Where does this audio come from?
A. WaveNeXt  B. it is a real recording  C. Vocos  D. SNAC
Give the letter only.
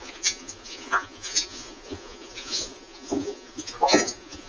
C